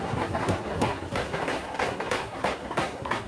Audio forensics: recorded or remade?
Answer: remade